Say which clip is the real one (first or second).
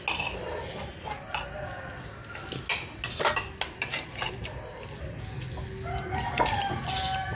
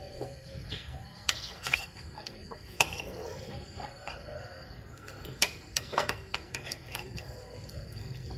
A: first